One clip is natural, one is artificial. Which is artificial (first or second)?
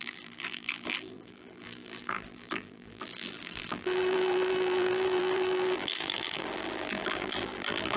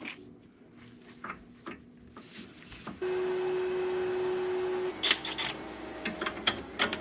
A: first